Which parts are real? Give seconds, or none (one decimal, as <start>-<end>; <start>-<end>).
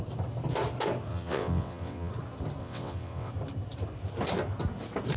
0.0-1.1; 2.1-2.6; 3.3-5.2